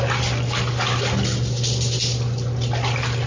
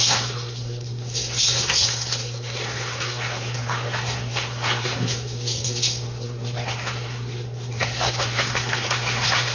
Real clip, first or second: first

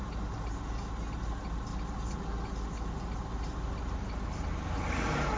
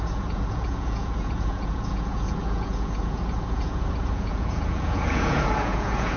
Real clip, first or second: first